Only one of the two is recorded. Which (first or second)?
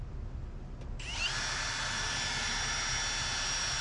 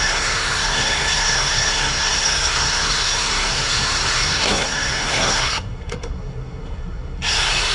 first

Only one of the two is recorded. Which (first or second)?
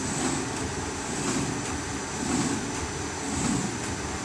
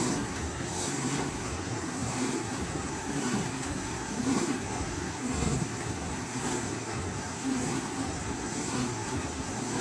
first